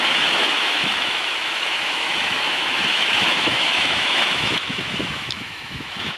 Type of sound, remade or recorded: remade